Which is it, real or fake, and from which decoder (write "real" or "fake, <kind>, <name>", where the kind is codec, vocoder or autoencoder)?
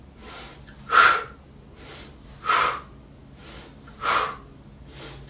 real